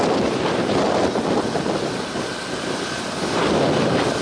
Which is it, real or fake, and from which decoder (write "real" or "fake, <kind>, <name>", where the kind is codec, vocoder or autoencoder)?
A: real